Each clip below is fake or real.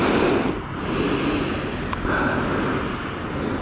real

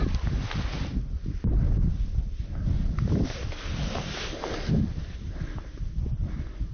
real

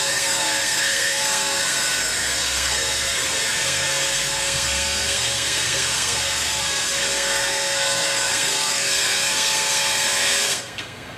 fake